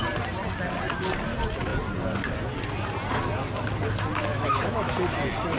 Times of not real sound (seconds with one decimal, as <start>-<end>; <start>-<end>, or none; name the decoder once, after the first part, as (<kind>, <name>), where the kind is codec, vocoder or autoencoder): 4.2-4.8 (autoencoder, DAC-VAE)